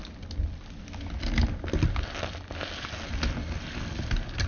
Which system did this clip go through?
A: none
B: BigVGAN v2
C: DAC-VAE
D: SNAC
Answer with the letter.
A